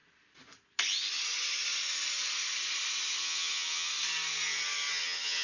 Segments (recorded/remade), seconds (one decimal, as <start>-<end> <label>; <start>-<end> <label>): 0.0-3.2 recorded; 3.2-3.9 remade; 3.9-4.9 recorded; 4.9-5.4 remade